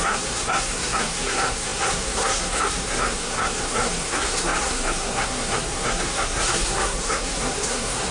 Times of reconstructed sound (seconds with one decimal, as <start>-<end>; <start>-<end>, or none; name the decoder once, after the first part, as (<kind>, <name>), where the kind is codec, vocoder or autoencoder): 0.0-8.1 (codec, SNAC)